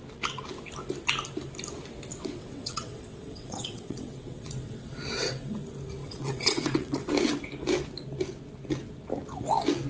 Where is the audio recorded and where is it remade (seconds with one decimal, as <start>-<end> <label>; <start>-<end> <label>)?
0.0-2.1 recorded; 2.1-5.5 remade; 5.5-6.0 recorded; 6.0-7.1 remade; 7.1-9.9 recorded